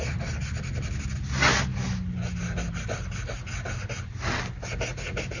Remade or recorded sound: recorded